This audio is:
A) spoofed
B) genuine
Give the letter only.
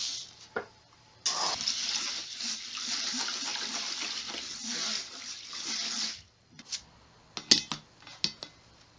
B